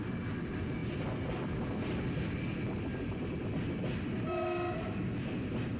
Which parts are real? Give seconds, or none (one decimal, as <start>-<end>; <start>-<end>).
0.0-5.8